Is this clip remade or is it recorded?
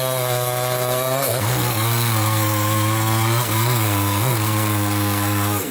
remade